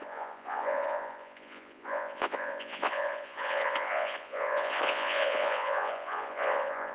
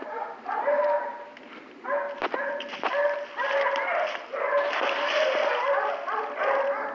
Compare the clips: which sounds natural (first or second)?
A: second